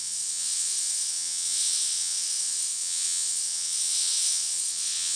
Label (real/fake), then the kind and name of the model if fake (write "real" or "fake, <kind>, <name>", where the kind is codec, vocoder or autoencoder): fake, vocoder, WaveNeXt